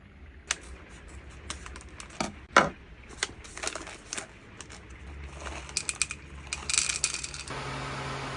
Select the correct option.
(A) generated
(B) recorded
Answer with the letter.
B